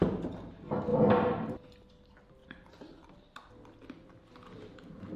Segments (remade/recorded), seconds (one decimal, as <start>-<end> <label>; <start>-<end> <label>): 0.0-0.9 recorded; 0.9-1.9 remade; 1.9-2.4 recorded; 2.4-3.5 remade; 3.5-5.2 recorded